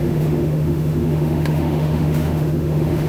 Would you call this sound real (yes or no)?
no